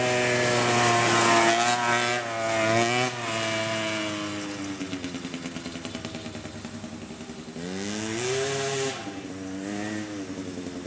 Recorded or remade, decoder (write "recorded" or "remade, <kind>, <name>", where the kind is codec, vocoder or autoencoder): recorded